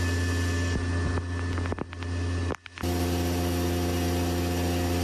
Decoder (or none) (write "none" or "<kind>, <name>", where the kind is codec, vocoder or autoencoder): none